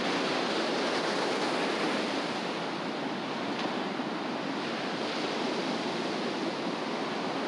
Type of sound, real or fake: real